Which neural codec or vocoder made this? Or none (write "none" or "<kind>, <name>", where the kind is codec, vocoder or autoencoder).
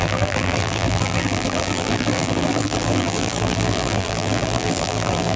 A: vocoder, BigVGAN v2